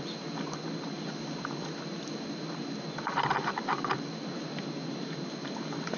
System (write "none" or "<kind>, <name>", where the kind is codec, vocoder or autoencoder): none